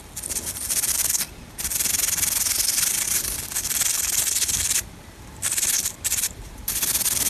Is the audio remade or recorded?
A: remade